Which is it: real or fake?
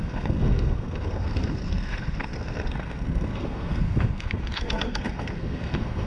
fake